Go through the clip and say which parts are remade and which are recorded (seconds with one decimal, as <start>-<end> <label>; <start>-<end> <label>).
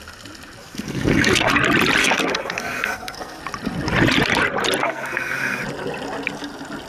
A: 0.0-0.6 recorded; 0.6-1.5 remade; 1.5-2.0 recorded; 2.0-3.4 remade; 3.4-4.8 recorded; 4.8-5.6 remade; 5.6-6.9 recorded